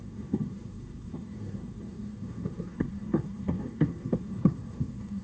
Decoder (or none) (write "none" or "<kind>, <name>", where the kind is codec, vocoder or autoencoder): codec, SNAC